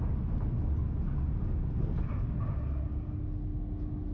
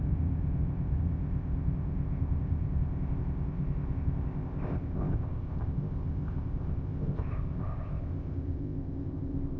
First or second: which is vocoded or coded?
second